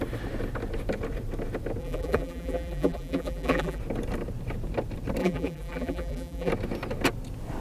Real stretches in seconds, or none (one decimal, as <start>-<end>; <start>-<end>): 0.0-1.8; 3.8-5.2; 6.5-7.6